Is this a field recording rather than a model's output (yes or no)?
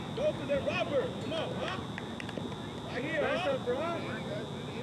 no